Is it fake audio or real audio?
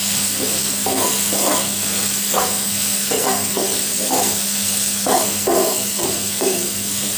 fake